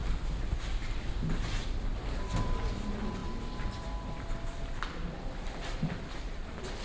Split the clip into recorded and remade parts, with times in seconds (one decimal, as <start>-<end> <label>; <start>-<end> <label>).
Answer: 0.0-1.1 remade; 1.1-1.6 recorded; 1.6-2.6 remade; 2.6-3.2 recorded; 3.2-6.8 remade